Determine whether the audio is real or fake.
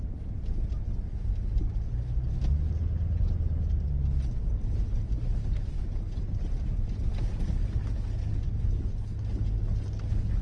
real